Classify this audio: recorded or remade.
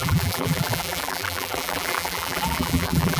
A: remade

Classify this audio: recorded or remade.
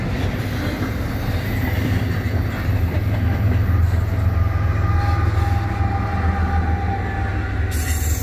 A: recorded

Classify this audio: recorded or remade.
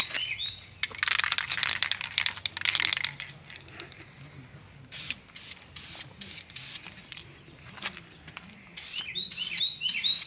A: recorded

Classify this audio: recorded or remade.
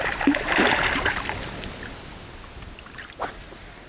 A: recorded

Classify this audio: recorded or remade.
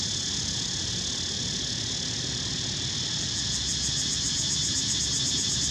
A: recorded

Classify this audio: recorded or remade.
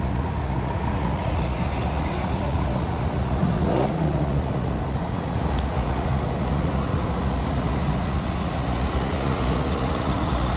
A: remade